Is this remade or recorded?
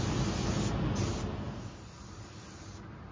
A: recorded